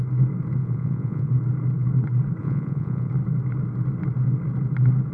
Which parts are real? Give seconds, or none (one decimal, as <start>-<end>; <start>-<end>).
0.0-0.6; 1.3-2.4; 3.1-5.1